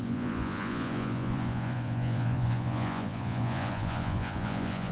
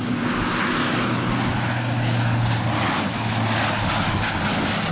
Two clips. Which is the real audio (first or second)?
second